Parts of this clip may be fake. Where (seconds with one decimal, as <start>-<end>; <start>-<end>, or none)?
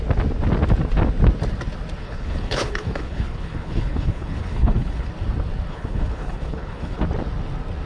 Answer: 2.0-5.1; 5.7-7.0